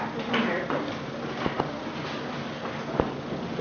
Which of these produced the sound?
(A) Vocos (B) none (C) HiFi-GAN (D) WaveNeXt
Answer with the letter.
B